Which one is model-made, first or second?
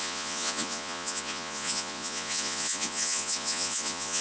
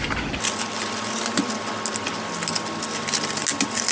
first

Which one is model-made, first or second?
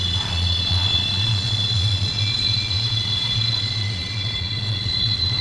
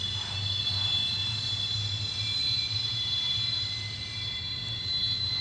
first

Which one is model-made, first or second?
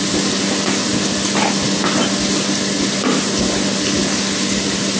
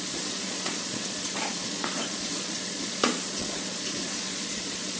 second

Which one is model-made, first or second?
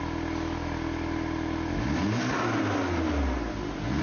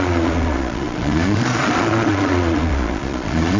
second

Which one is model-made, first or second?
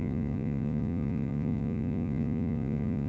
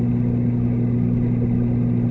first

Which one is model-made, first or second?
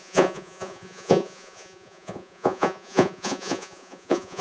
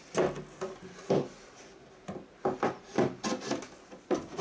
first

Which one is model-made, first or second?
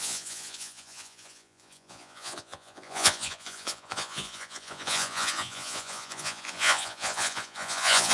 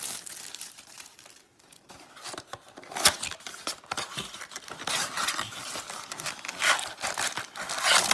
first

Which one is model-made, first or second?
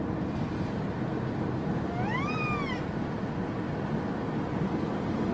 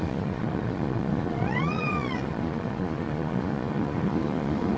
second